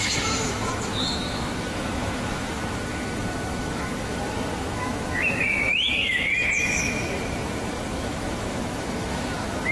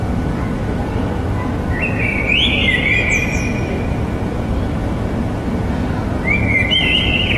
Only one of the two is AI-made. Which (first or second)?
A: first